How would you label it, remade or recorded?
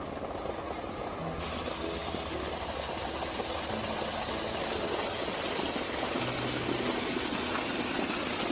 recorded